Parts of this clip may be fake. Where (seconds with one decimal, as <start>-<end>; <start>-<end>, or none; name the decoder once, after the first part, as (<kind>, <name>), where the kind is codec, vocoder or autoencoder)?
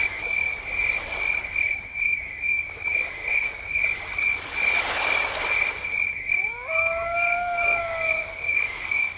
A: 0.0-0.5 (codec, DAC); 1.5-3.8; 6.1-9.2